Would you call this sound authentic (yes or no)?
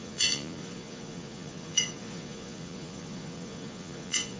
no